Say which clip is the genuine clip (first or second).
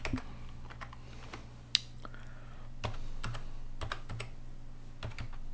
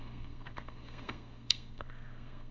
first